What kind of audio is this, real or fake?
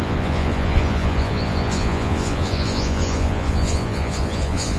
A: fake